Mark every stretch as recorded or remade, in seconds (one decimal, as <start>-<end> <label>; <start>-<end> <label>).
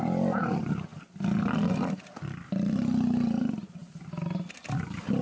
0.0-5.2 recorded